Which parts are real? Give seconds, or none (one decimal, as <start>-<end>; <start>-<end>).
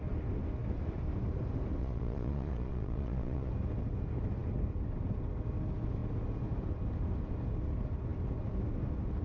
0.0-1.8; 3.5-9.2